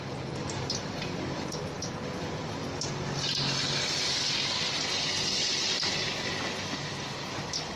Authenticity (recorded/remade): recorded